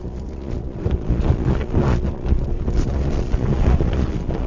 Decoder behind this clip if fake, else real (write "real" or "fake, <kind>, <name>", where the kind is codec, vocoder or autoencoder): fake, vocoder, Vocos